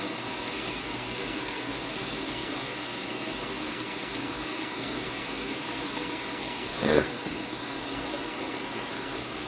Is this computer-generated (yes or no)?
yes